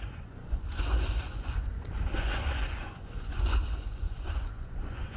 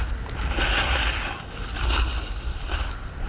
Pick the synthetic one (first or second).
first